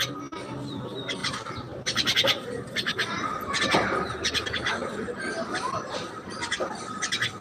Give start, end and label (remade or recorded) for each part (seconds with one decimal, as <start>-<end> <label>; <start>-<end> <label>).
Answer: 0.0-1.2 recorded; 1.2-3.6 remade; 3.6-7.4 recorded